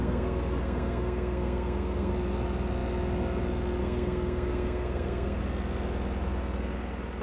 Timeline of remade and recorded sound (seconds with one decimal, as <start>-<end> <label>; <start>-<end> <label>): 0.0-2.1 remade; 2.1-3.8 recorded; 3.8-5.4 remade; 5.4-7.2 recorded

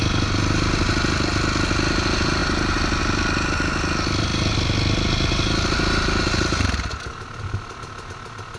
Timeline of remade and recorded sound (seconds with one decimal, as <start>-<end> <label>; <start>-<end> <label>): 0.0-8.6 recorded

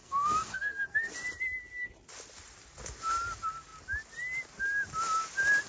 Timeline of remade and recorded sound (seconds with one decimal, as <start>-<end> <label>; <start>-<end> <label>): 0.0-1.1 remade; 1.1-5.7 recorded

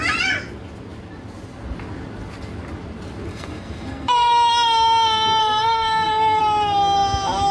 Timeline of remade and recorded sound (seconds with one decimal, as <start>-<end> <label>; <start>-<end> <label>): 0.0-3.3 recorded; 3.3-4.3 remade; 4.3-5.4 recorded; 5.4-6.4 remade; 6.4-7.5 recorded

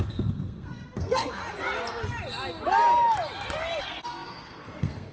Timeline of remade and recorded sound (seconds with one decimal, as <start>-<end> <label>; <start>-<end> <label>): 0.0-1.4 remade; 1.4-3.8 recorded; 3.8-5.1 remade

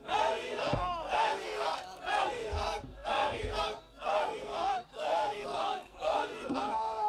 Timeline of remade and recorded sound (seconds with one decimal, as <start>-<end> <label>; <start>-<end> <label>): 0.0-7.1 remade